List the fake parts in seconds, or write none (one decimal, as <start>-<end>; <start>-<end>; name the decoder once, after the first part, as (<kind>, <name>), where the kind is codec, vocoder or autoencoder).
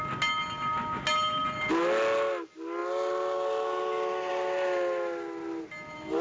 none